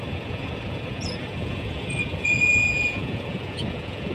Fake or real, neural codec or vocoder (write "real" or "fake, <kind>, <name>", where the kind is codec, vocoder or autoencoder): fake, vocoder, Vocos